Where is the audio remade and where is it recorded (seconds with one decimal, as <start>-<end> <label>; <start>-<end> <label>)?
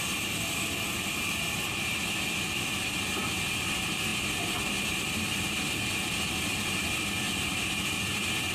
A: 0.0-8.5 recorded